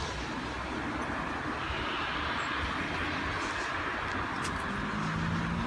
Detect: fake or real real